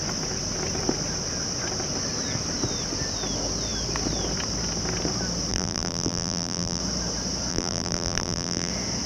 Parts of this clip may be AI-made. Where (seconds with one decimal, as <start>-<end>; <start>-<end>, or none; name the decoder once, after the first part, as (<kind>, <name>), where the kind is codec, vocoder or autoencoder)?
5.5-6.8 (vocoder, BigVGAN v2); 7.5-8.7